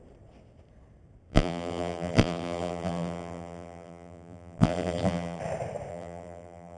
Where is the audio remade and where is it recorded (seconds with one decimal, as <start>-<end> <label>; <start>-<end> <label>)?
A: 0.0-1.3 recorded; 1.3-5.4 remade; 5.4-5.9 recorded; 5.9-6.8 remade